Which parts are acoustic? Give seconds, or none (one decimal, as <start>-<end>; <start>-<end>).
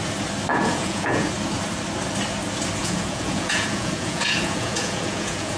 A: 0.0-0.5; 1.3-2.8